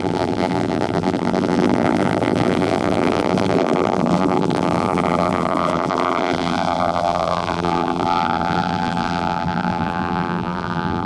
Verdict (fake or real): fake